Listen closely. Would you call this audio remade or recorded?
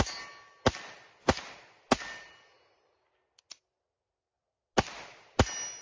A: recorded